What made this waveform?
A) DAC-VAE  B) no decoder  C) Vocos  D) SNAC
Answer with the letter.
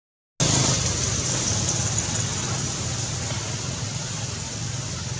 B